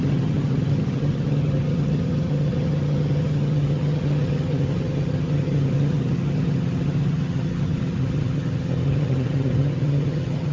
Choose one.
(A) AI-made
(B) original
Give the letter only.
A